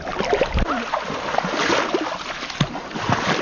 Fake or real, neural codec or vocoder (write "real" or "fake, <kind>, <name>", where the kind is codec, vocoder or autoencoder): real